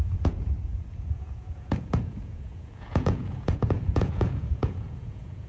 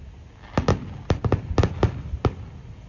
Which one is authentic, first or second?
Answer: second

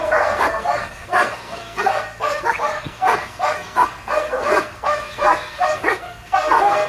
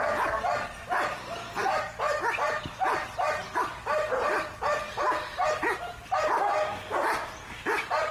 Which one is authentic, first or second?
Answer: second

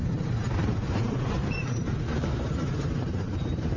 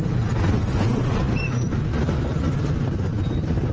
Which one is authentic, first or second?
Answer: second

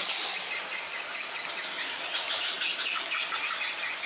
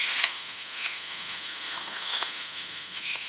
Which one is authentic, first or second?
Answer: first